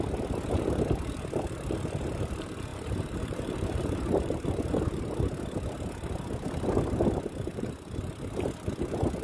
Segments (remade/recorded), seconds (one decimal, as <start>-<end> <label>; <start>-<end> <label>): 0.0-2.7 recorded; 2.7-4.5 remade; 4.5-7.5 recorded; 7.5-8.0 remade; 8.0-9.2 recorded